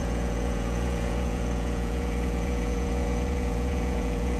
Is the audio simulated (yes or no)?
yes